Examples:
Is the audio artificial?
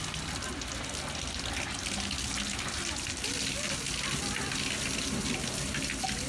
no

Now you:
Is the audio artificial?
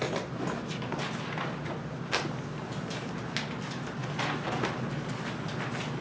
no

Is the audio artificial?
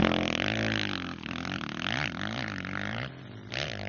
no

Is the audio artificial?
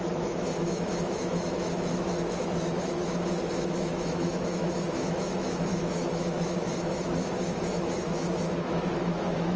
yes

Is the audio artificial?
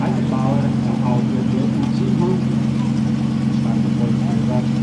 no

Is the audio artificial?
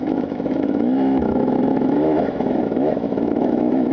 yes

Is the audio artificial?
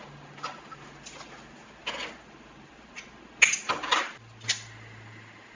no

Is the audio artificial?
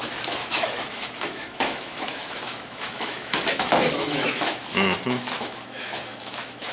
yes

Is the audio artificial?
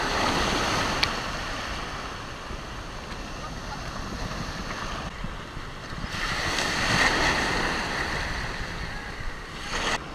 no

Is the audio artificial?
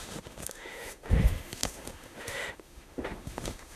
yes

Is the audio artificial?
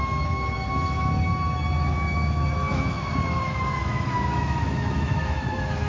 yes